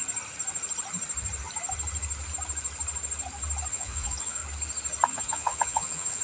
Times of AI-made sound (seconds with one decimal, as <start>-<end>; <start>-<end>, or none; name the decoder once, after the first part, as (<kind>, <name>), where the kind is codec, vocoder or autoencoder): 3.7-4.4 (vocoder, Vocos); 5.1-6.2